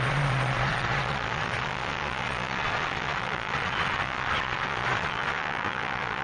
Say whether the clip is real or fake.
fake